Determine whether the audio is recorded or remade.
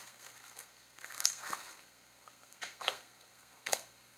remade